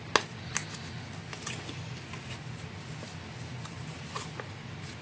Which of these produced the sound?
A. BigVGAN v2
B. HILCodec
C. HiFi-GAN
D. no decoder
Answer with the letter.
D